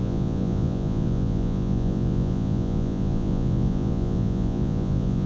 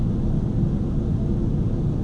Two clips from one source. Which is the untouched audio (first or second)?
second